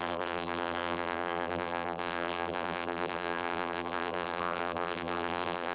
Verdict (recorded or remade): remade